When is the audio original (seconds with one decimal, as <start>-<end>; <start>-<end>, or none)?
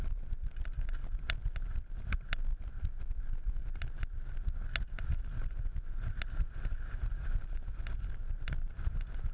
0.0-9.3